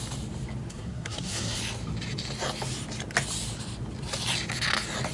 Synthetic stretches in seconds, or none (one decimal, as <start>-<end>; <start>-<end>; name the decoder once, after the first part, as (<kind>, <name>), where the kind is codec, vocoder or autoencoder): 0.7-1.6 (codec, SNAC)